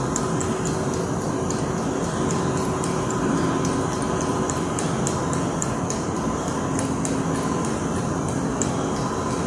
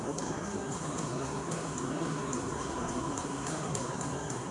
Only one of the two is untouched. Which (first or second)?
first